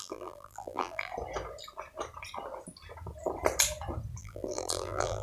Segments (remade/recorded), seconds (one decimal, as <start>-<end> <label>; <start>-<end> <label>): 0.0-1.1 remade; 1.1-4.2 recorded; 4.2-5.2 remade